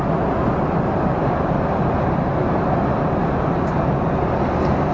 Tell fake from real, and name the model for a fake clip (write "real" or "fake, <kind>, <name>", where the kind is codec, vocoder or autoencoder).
real